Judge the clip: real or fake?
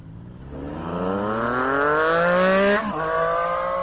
real